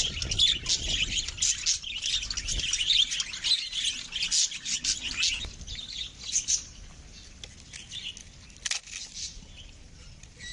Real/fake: real